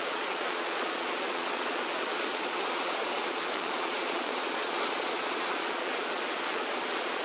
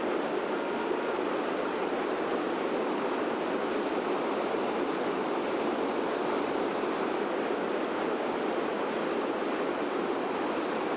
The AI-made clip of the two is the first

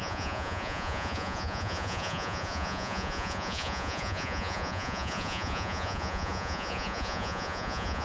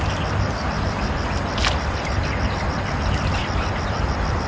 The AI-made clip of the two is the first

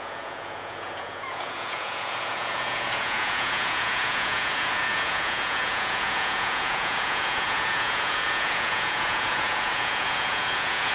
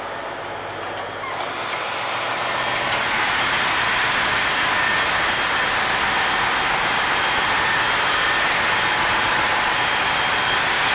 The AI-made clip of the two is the first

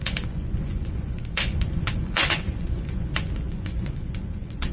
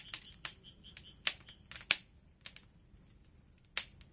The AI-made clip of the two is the first